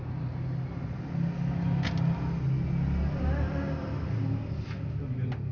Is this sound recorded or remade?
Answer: recorded